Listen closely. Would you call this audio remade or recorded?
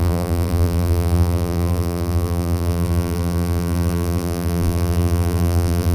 remade